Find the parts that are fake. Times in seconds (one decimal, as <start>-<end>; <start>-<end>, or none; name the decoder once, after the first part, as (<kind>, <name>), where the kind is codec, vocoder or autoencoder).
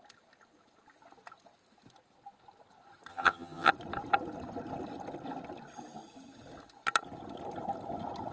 3.1-3.7 (vocoder, HiFi-GAN)